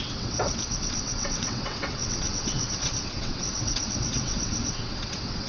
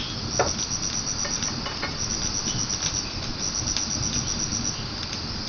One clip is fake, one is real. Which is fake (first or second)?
first